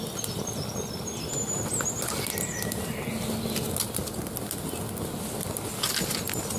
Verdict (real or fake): real